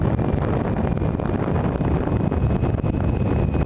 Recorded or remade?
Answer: recorded